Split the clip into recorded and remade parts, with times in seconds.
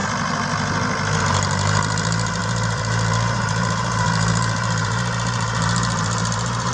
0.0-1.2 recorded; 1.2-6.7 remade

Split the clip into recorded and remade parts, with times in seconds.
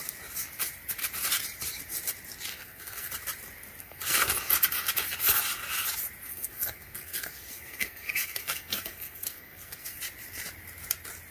0.0-2.5 recorded; 2.5-3.1 remade; 3.1-3.8 recorded; 3.8-4.3 remade; 4.3-6.3 recorded; 6.3-10.0 remade; 10.0-11.3 recorded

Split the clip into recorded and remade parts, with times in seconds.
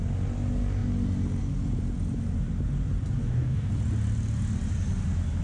0.0-3.2 recorded; 3.2-3.7 remade; 3.7-5.4 recorded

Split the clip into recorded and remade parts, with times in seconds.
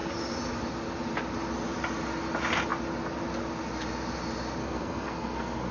0.0-4.6 recorded; 4.6-5.7 remade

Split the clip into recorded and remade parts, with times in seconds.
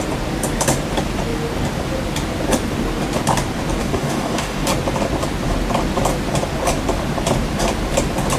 0.0-3.8 recorded; 3.8-4.7 remade; 4.7-8.4 recorded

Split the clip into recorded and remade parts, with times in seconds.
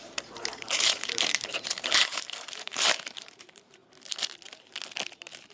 0.0-3.8 remade; 3.8-5.5 recorded